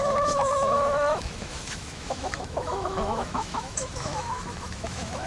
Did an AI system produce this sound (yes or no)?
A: yes